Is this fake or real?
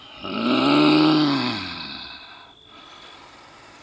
real